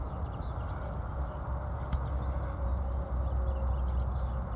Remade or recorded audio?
recorded